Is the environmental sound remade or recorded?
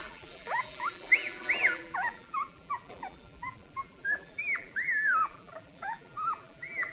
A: remade